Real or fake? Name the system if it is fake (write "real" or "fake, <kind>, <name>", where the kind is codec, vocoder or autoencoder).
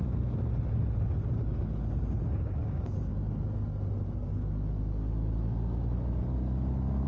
real